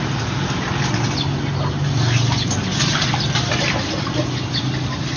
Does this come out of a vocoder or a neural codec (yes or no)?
no